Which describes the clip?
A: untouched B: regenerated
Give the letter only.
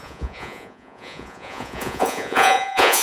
B